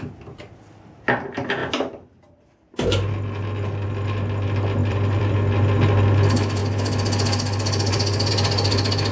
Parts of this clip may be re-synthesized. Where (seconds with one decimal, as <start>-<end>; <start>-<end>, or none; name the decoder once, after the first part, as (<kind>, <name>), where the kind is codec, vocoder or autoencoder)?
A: 4.8-5.3 (vocoder, BigVGAN v2)